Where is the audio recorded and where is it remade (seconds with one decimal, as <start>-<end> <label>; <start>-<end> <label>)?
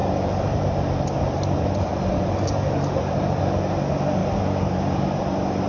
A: 0.0-3.4 remade; 3.4-4.2 recorded; 4.2-5.0 remade; 5.0-5.7 recorded